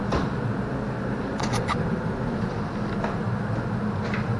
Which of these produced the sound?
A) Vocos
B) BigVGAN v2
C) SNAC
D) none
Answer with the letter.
D